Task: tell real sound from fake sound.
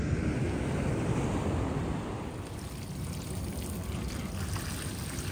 real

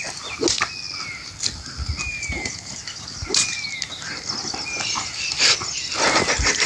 real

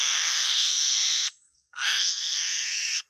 fake